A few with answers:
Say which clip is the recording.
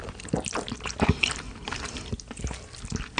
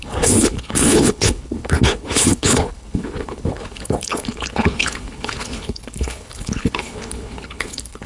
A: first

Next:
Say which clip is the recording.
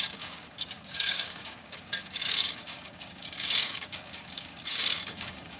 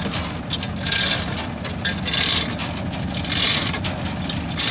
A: second